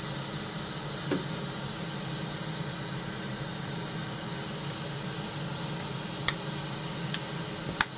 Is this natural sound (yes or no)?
yes